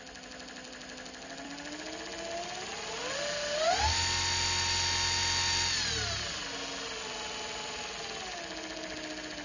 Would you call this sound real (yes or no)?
yes